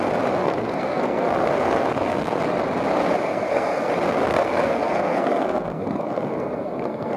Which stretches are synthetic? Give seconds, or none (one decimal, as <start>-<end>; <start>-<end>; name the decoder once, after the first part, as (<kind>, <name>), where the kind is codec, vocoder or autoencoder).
0.4-2.4 (codec, SNAC); 3.3-3.9; 4.3-7.2